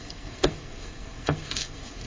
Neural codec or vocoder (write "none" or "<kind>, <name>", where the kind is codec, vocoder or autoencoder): codec, SNAC